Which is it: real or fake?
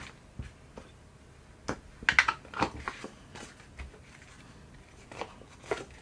real